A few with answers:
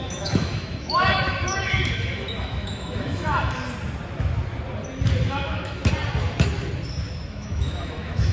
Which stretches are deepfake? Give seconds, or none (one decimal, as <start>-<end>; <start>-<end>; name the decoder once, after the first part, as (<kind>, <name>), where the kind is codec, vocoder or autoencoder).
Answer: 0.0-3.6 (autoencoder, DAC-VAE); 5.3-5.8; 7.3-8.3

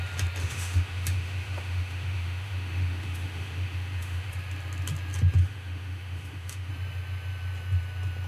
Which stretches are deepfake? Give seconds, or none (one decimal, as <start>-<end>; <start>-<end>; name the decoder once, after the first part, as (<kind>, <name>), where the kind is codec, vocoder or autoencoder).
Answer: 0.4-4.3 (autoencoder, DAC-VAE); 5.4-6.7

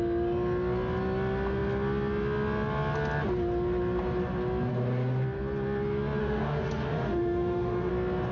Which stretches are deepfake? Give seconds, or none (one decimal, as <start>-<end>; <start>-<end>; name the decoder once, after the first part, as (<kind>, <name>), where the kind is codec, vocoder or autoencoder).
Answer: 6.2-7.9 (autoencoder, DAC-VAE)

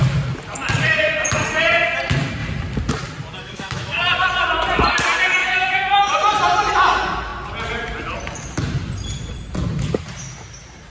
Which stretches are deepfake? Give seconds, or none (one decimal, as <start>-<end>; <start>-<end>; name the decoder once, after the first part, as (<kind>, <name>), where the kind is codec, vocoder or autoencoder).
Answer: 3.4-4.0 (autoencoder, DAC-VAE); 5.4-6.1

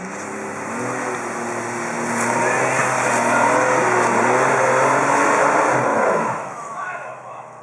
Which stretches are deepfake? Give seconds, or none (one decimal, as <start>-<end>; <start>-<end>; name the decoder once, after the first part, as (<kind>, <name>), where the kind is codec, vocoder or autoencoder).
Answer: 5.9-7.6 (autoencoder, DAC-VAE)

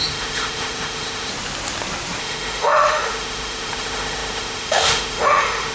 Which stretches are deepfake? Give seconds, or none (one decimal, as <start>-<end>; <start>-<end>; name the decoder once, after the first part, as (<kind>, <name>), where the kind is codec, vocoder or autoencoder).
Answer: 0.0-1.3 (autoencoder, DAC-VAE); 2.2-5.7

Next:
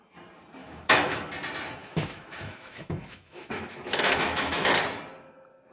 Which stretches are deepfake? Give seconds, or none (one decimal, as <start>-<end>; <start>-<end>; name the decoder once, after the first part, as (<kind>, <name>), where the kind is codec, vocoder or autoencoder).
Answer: 0.6-1.3 (autoencoder, DAC-VAE); 1.8-4.7

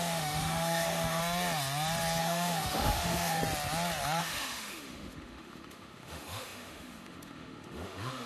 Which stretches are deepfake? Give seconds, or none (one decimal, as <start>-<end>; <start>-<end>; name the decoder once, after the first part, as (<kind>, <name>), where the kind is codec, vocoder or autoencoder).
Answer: 0.0-1.2 (autoencoder, DAC-VAE); 2.2-3.4; 4.2-8.3